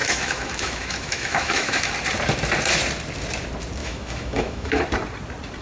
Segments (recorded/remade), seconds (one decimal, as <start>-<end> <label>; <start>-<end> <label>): 0.0-1.9 remade; 1.9-3.8 recorded; 3.8-4.8 remade; 4.8-5.6 recorded